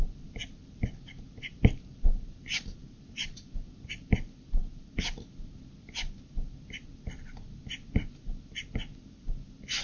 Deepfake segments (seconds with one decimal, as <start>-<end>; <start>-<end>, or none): none

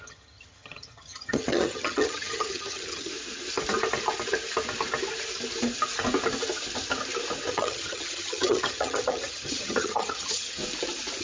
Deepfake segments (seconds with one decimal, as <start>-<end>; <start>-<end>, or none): 0.0-3.1; 7.5-10.6